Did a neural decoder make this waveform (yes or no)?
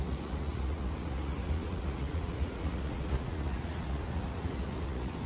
yes